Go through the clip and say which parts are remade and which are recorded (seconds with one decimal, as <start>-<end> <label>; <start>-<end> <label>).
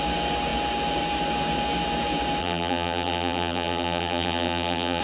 0.0-2.4 recorded; 2.4-5.0 remade